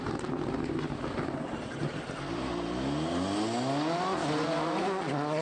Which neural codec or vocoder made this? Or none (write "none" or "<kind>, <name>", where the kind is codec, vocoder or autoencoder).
none